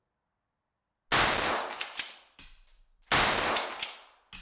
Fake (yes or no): no